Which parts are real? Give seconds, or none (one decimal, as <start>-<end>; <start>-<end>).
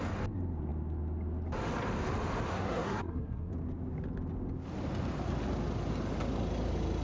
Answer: 0.0-2.5; 3.5-7.0